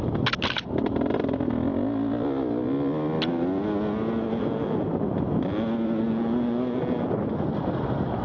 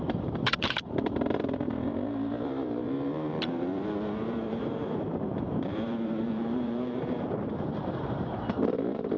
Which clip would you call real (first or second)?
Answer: first